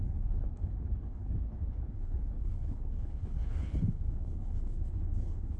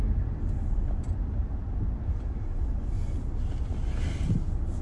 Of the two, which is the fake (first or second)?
first